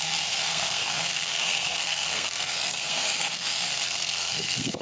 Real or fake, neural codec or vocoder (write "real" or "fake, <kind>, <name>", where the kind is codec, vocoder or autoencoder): fake, codec, SNAC